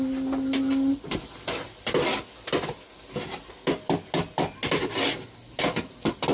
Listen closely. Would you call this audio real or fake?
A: real